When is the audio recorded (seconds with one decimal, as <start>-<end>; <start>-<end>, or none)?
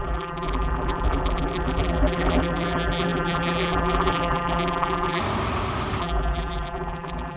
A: 5.2-6.0